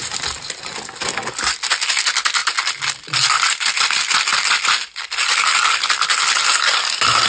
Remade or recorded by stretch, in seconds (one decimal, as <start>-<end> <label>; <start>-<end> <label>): 0.0-7.3 recorded